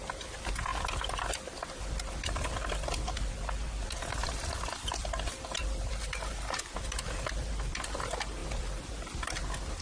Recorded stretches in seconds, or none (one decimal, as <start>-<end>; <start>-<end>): 0.0-4.2; 5.9-9.8